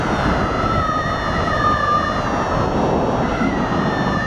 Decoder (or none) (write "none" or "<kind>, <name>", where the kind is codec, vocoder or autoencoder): none